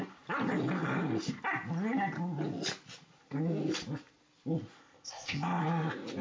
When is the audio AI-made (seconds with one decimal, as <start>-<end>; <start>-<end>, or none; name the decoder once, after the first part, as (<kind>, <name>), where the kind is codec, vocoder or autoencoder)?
4.8-5.6 (codec, ZipCodec)